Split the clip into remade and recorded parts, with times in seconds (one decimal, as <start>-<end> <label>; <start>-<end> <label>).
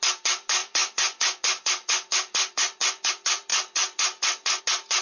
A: 0.0-0.6 recorded; 0.6-3.1 remade; 3.1-3.5 recorded; 3.5-4.6 remade; 4.6-5.0 recorded